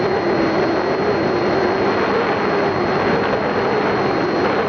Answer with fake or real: real